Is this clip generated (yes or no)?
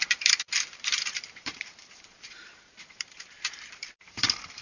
yes